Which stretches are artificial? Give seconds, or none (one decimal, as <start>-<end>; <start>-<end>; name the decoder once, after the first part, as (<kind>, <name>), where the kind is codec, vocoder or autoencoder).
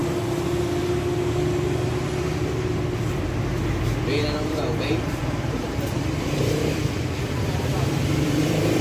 1.9-3.5 (vocoder, BigVGAN v2); 5.0-8.8